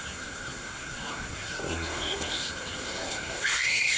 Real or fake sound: fake